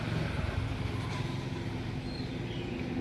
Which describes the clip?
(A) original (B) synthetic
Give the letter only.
A